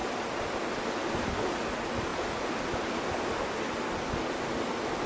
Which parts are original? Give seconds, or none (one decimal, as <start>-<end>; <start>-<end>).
0.0-5.1